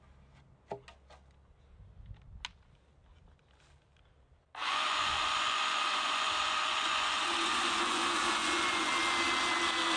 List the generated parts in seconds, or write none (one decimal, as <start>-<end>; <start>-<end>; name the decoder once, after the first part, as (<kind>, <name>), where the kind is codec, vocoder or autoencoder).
4.6-8.9 (vocoder, Vocos)